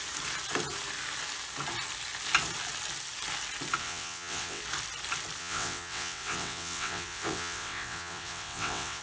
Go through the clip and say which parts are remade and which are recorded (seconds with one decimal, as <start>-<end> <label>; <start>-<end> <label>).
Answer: 0.0-3.8 recorded; 3.8-4.6 remade; 4.6-5.4 recorded; 5.4-9.0 remade